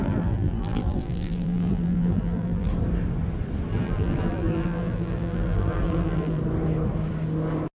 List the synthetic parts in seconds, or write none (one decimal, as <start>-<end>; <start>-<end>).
0.0-2.7; 3.7-6.4